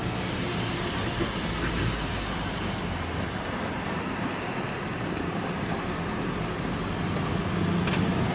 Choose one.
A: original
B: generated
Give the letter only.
A